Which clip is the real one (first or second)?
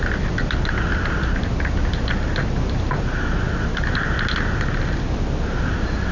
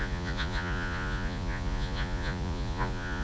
first